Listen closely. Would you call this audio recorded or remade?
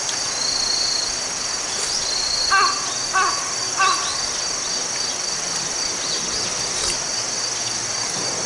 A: recorded